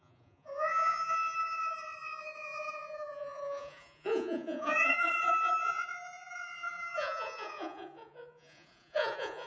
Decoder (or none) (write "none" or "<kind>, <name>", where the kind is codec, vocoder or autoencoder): vocoder, Vocos